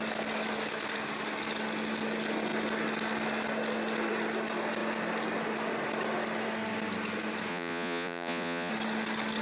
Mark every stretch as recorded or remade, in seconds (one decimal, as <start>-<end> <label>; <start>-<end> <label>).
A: 0.0-7.5 recorded; 7.5-8.7 remade; 8.7-9.4 recorded